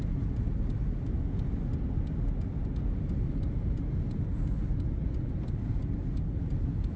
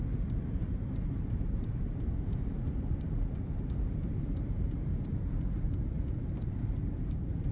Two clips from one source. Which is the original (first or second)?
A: first